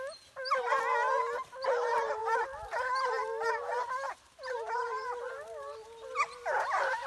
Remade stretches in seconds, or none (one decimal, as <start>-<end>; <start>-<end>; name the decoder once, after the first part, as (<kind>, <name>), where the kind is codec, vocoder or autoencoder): 4.1-5.2 (vocoder, BigVGAN v2)